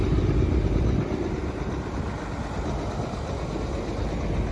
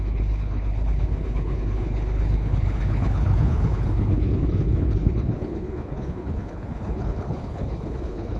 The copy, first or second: second